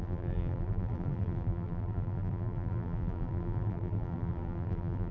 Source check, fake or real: fake